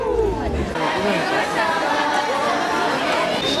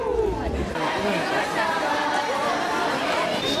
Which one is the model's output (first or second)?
second